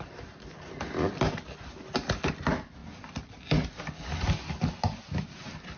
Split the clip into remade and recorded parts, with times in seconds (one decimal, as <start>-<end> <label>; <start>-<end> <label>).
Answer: 0.0-5.8 recorded